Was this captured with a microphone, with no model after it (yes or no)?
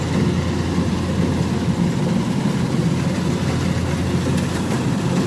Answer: yes